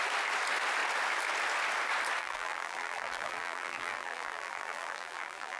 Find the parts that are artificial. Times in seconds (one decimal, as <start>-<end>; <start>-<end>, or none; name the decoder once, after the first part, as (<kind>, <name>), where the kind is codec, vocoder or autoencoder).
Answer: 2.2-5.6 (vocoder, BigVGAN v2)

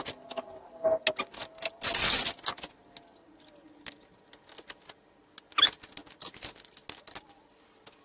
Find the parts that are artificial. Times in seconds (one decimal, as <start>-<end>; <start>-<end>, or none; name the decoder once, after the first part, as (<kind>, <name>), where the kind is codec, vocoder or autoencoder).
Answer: none

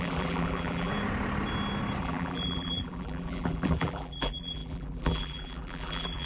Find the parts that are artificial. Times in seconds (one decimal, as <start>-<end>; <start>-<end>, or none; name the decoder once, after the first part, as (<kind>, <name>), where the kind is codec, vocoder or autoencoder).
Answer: 0.0-0.9 (vocoder, BigVGAN v2); 2.0-6.3

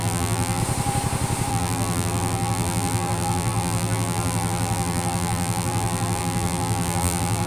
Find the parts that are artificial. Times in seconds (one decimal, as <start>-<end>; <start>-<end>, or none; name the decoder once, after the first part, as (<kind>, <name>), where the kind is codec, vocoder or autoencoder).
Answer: 0.0-0.6 (vocoder, BigVGAN v2); 1.5-7.5